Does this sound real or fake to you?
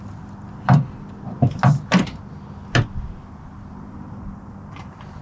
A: real